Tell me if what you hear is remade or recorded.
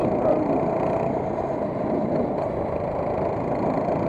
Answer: recorded